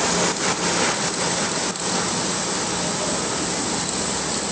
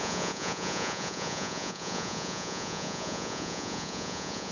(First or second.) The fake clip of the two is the second